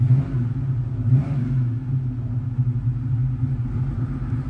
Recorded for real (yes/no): yes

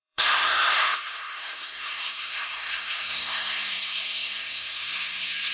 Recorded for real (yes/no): no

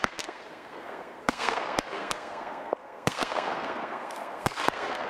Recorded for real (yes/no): no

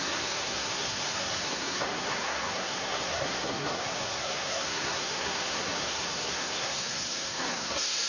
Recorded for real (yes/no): no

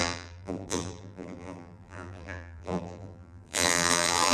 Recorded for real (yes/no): no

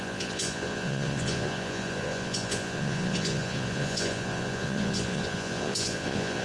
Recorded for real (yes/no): no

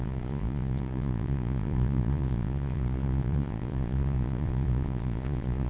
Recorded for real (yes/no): no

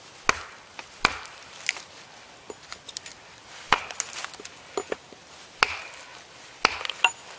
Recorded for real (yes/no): yes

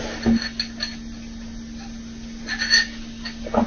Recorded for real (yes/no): yes